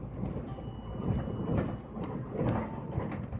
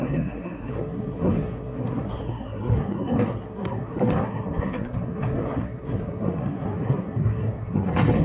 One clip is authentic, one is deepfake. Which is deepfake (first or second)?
second